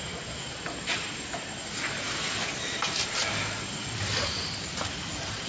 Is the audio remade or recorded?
remade